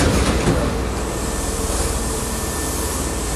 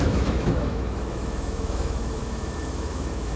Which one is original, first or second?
first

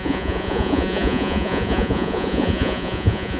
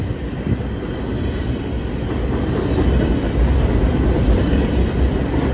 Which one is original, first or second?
second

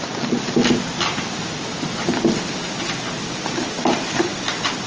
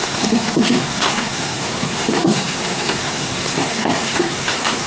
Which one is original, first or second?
first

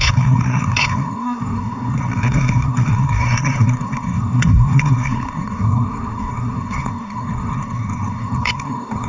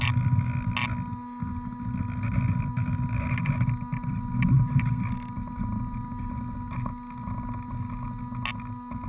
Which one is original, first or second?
second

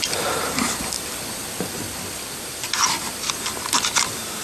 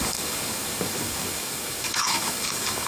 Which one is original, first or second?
first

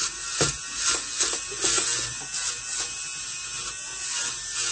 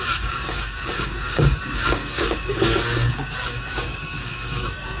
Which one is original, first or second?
first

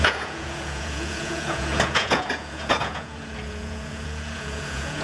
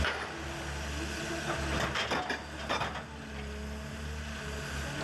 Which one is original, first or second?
second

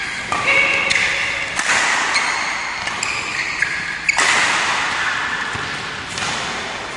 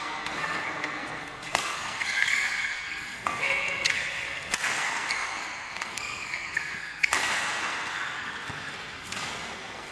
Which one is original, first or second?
first